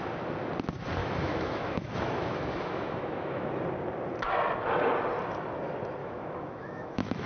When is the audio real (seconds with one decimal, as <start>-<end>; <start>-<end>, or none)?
0.0-1.0; 3.5-6.0